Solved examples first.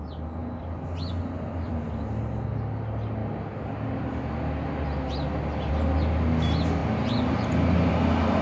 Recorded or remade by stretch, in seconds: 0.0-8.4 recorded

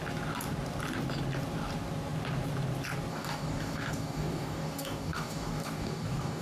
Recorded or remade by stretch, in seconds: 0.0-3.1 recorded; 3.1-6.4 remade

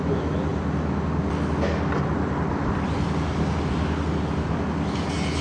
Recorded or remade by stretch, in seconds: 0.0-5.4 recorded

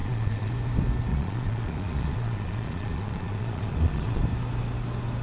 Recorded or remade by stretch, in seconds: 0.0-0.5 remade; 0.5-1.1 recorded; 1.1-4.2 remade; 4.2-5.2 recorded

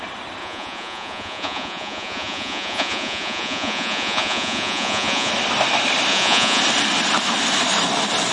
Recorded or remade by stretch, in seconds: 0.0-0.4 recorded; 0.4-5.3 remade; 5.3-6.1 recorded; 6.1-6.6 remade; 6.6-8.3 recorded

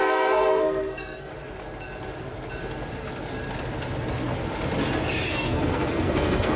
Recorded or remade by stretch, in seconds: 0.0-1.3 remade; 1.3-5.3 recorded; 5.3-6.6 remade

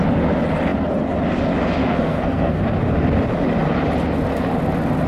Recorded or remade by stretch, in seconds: 0.0-1.8 recorded; 1.8-2.6 remade; 2.6-5.1 recorded

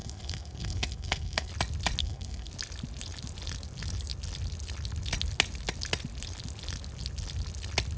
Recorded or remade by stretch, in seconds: 0.0-1.5 remade; 1.5-2.0 recorded; 2.0-2.5 remade; 2.5-8.0 recorded